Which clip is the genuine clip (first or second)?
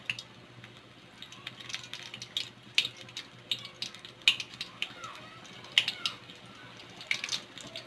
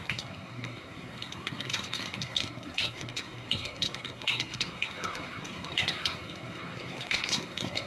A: first